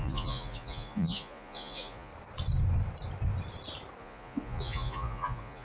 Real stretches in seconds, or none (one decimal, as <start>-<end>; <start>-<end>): 2.1-4.0